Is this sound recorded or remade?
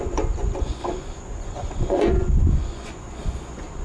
remade